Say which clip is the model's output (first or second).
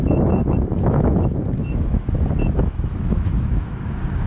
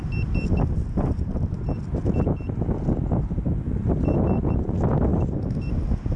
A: first